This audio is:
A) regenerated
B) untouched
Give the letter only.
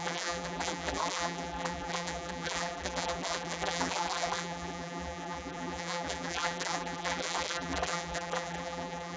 A